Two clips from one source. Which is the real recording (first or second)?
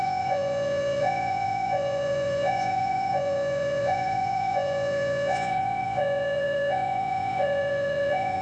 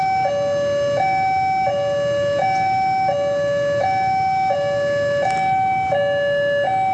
second